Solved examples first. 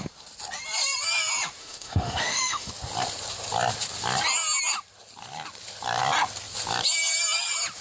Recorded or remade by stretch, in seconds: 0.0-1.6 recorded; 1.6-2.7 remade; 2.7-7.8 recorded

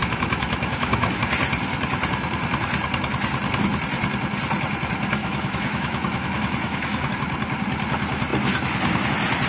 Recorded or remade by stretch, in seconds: 0.0-1.2 remade; 1.2-5.2 recorded; 5.2-7.1 remade; 7.1-9.5 recorded

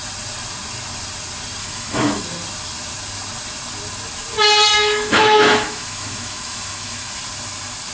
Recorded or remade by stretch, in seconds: 0.0-1.6 recorded; 1.6-2.2 remade; 2.2-4.7 recorded; 4.7-7.2 remade; 7.2-7.9 recorded

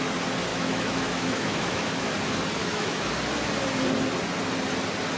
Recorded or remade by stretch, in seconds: 0.0-0.5 recorded; 0.5-2.1 remade; 2.1-2.6 recorded; 2.6-3.1 remade; 3.1-5.2 recorded